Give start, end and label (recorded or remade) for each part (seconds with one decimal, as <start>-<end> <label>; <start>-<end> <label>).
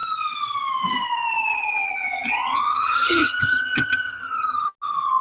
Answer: 0.0-1.5 recorded; 1.5-4.6 remade; 4.6-5.2 recorded